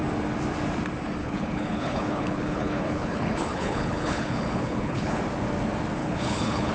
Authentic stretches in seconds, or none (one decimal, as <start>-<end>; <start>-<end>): 0.0-1.2; 5.2-6.0